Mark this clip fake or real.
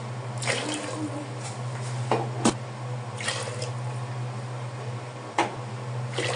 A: real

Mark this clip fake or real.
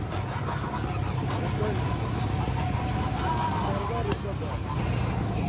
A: real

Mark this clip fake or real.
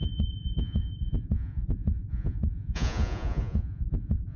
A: fake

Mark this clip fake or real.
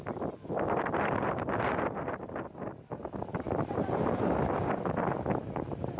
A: real